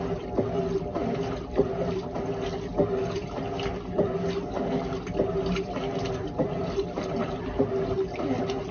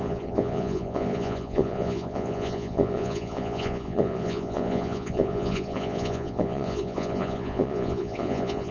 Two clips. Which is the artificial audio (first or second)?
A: second